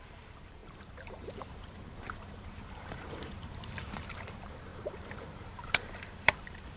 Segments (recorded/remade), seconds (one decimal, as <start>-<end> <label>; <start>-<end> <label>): 0.0-6.8 remade